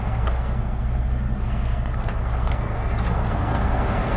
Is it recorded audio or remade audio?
remade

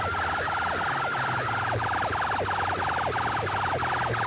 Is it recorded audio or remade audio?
recorded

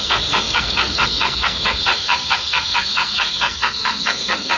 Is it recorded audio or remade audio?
remade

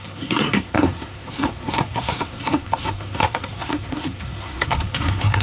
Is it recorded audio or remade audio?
remade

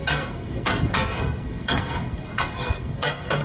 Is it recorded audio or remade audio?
remade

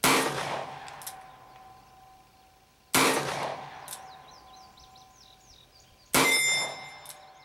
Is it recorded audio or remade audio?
recorded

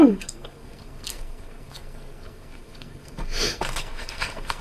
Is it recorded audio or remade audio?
remade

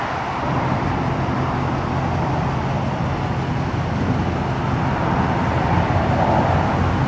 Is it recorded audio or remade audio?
recorded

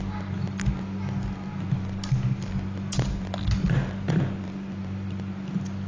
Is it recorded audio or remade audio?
recorded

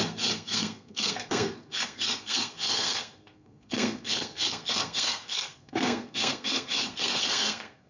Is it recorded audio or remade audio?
remade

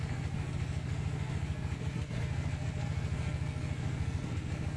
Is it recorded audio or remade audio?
remade